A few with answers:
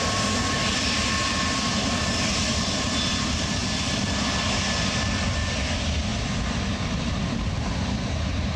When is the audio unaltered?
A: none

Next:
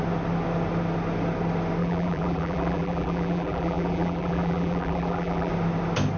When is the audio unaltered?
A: 0.0-1.8; 5.5-6.2

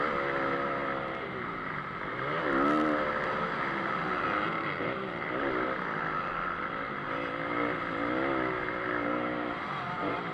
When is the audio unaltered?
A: 0.0-10.3

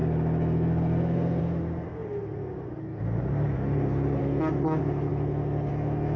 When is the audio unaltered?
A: 0.0-6.2

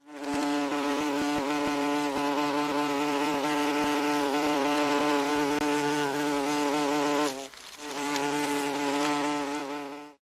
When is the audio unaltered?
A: 5.3-7.9

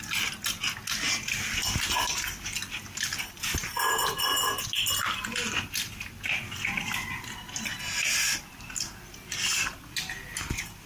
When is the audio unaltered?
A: 0.0-10.9